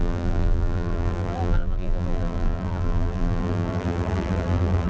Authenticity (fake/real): fake